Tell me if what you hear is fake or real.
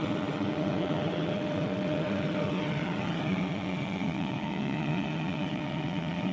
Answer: fake